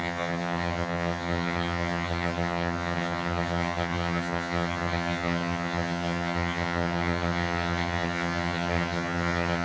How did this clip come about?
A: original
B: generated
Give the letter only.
B